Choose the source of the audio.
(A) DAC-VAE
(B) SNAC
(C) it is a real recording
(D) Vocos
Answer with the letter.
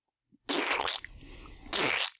C